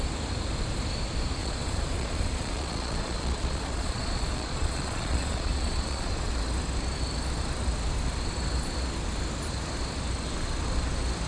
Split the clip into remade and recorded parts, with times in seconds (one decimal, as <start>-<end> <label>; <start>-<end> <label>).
0.0-1.4 recorded; 1.4-6.3 remade; 6.3-11.3 recorded